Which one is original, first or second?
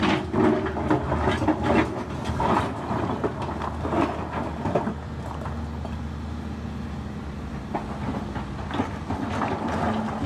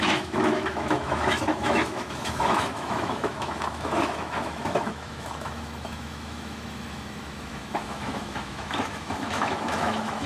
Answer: first